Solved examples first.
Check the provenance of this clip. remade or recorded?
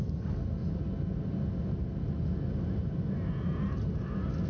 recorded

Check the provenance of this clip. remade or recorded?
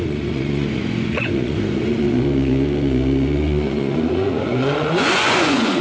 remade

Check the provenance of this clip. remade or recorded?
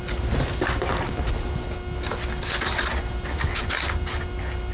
recorded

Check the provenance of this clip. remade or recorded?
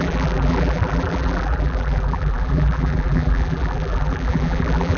remade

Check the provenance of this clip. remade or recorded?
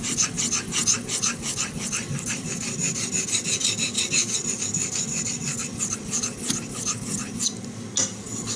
recorded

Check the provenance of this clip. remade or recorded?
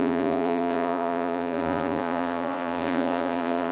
remade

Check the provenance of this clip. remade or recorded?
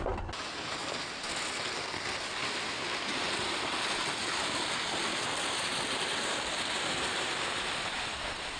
recorded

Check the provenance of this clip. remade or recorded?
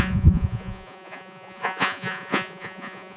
remade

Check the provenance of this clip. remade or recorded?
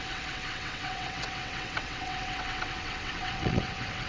remade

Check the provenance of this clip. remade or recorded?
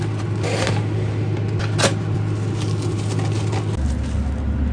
recorded